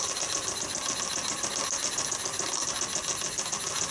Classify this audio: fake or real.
real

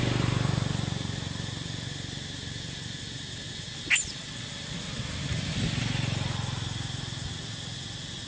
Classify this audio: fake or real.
real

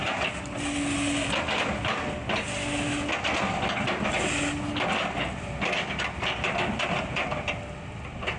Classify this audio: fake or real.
real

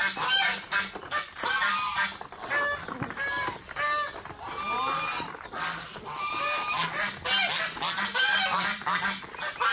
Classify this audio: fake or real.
real